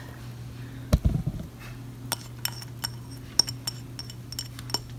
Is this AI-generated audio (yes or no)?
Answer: no